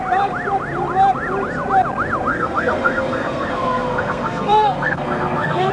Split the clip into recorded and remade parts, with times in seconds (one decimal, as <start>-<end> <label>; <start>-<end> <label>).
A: 0.0-2.3 recorded; 2.3-5.7 remade